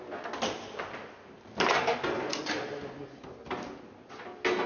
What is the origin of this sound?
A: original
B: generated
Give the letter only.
A